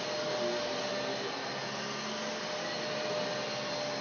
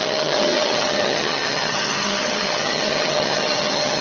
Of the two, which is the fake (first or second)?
second